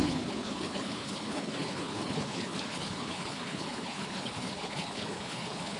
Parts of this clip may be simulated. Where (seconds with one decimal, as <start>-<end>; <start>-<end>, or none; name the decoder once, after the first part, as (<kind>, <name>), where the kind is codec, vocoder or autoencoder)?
0.0-5.8 (codec, HILCodec)